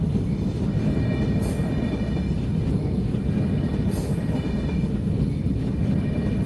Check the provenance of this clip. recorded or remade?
recorded